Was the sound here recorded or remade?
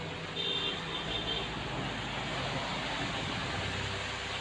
recorded